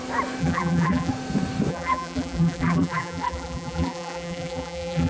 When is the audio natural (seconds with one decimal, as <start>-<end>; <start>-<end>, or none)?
0.0-0.4; 1.1-1.7